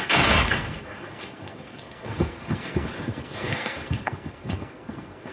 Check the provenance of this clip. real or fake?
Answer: fake